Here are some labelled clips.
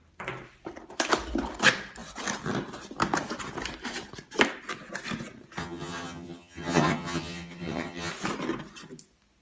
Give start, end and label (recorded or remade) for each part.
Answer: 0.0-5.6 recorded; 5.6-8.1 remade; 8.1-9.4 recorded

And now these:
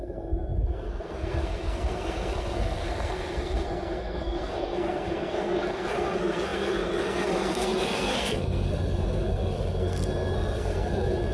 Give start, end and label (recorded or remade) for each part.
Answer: 0.0-11.3 remade

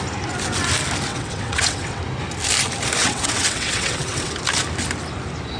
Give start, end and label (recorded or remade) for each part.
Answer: 0.0-1.1 recorded; 1.1-2.0 remade; 2.0-3.0 recorded; 3.0-4.3 remade; 4.3-5.6 recorded

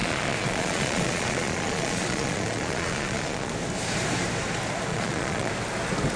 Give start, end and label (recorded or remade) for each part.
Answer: 0.0-3.5 remade; 3.5-4.9 recorded; 4.9-5.5 remade; 5.5-6.2 recorded

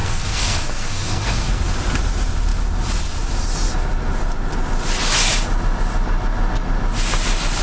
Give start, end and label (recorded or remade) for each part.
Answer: 0.0-1.6 remade; 1.6-7.6 recorded